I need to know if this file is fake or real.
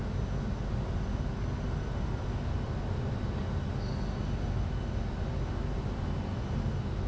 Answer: real